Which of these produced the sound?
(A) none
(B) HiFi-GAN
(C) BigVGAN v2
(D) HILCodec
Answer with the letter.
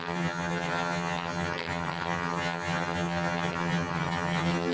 B